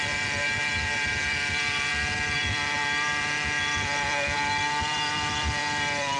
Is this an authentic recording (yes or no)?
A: no